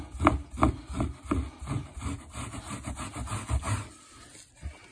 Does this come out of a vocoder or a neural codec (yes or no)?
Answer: no